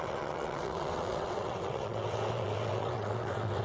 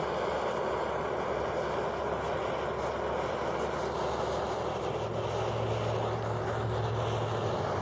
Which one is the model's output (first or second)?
first